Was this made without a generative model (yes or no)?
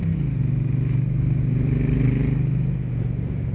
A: yes